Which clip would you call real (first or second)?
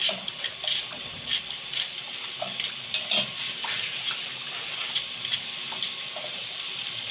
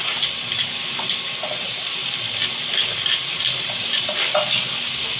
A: second